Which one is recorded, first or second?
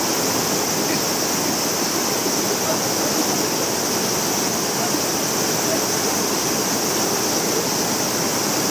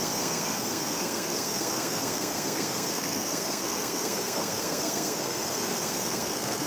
first